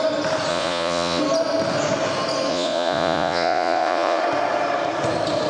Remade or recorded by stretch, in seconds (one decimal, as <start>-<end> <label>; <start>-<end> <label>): 0.0-0.5 recorded; 0.5-1.2 remade; 1.2-2.5 recorded; 2.5-4.2 remade; 4.2-5.5 recorded